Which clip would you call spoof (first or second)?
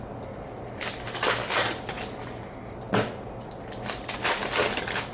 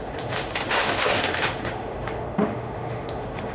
second